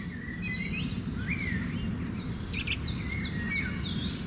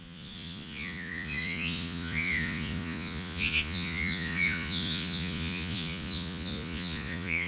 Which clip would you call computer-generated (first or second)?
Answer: second